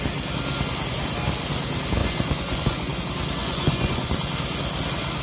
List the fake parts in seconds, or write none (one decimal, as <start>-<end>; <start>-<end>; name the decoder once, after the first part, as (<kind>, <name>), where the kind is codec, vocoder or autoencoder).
2.0-3.0 (vocoder, Vocos); 3.4-4.1